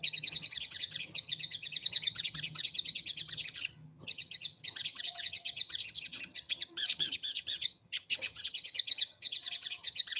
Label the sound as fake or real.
fake